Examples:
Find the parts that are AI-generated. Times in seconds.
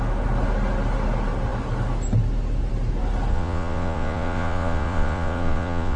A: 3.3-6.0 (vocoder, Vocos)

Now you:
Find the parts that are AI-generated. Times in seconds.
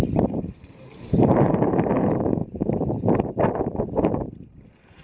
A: 0.0-5.0 (vocoder, BigVGAN v2)